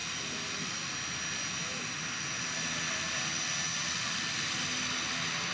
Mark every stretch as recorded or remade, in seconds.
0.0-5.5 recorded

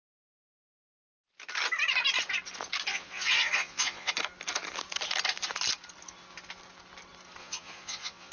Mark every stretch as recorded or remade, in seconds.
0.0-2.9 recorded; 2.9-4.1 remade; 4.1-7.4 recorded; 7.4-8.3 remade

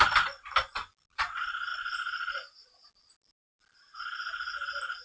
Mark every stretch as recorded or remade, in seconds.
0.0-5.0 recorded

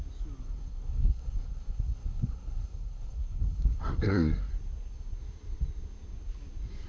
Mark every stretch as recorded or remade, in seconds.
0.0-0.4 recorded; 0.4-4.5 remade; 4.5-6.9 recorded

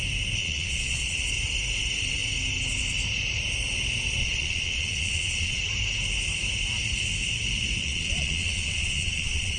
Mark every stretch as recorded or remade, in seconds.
0.0-0.4 recorded; 0.4-1.2 remade; 1.2-4.2 recorded; 4.2-5.6 remade; 5.6-7.8 recorded; 7.8-9.6 remade

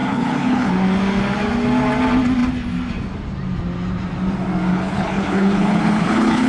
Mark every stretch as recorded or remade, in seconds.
0.0-0.7 remade; 0.7-4.7 recorded; 4.7-6.5 remade

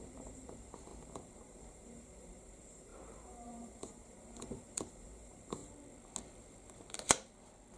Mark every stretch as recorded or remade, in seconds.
0.0-5.6 remade; 5.6-7.8 recorded

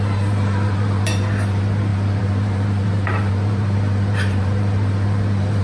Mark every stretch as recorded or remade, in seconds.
0.0-5.6 remade